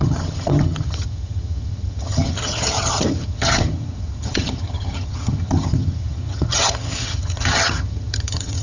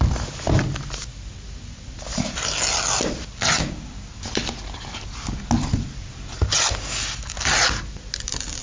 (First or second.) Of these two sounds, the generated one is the first